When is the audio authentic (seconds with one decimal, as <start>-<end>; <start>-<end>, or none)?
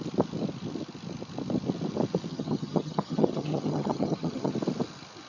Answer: 0.0-2.3; 4.5-5.3